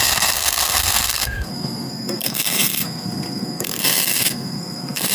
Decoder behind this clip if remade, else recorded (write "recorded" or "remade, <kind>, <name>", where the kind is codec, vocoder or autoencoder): remade, codec, SNAC